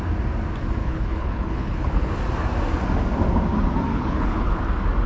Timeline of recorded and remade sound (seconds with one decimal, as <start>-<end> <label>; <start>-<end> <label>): 0.0-0.8 recorded; 0.8-2.1 remade; 2.1-3.9 recorded; 3.9-4.6 remade; 4.6-5.1 recorded